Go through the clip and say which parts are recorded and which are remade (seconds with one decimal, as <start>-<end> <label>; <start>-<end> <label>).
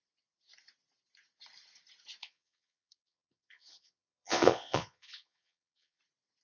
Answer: 0.0-2.2 recorded; 2.2-6.0 remade; 6.0-6.4 recorded